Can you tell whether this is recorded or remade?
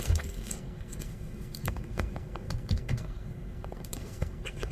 remade